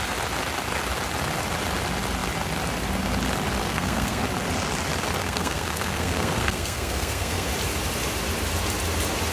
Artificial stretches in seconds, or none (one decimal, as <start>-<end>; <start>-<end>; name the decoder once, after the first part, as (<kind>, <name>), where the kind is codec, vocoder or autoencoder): 3.6-4.2 (codec, SNAC); 5.2-7.5